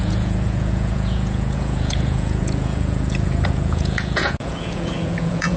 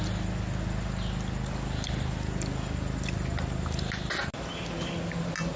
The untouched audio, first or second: second